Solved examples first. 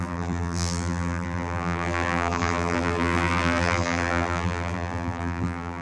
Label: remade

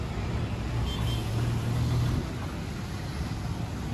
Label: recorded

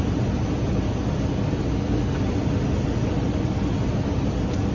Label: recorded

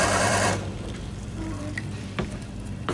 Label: remade